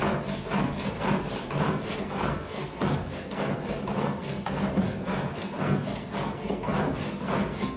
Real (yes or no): no